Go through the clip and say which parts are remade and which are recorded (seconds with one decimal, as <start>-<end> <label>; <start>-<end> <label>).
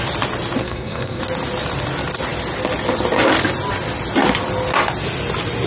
0.0-0.6 recorded; 0.6-1.2 remade; 1.2-5.7 recorded